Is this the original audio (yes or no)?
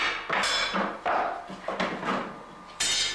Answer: yes